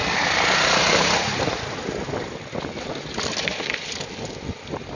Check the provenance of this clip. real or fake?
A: real